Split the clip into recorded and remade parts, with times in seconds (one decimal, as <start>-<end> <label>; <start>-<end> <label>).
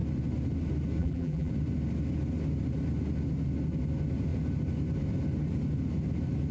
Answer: 0.0-1.0 recorded; 1.0-1.5 remade; 1.5-6.5 recorded